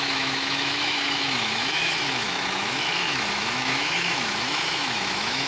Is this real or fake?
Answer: fake